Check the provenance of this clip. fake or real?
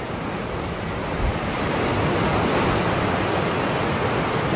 real